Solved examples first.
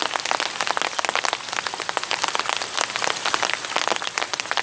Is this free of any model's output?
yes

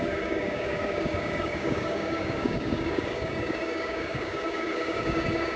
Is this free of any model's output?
no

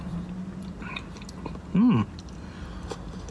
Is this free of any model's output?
yes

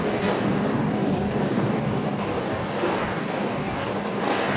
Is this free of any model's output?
no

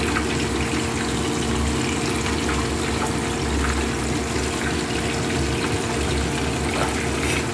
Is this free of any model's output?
yes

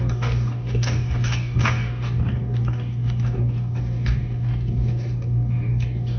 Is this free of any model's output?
no